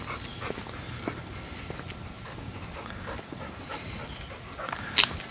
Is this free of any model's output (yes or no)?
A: yes